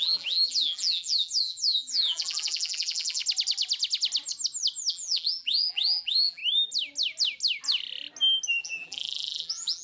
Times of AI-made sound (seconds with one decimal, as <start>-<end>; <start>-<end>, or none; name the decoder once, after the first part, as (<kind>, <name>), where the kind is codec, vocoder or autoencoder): 0.0-3.2 (vocoder, BigVGAN v2); 4.9-6.4; 8.6-9.8